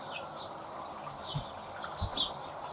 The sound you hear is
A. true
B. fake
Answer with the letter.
A